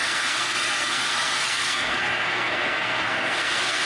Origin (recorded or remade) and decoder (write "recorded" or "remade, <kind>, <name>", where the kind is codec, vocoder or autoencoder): remade, codec, SNAC